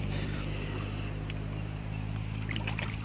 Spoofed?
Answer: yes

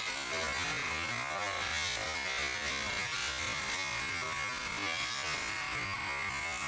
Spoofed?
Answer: no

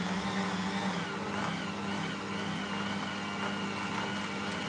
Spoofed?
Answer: no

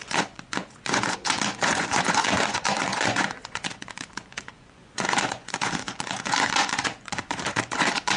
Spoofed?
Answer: yes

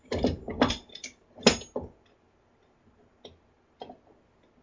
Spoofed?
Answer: no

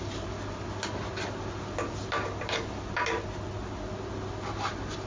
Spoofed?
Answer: no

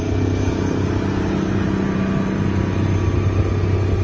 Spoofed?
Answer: no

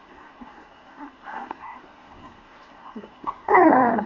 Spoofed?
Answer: yes